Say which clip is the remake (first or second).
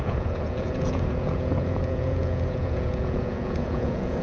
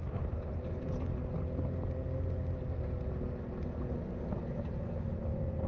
first